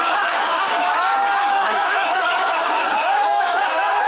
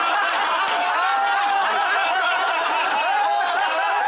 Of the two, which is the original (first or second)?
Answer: second